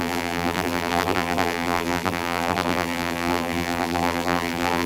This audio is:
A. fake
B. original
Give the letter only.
A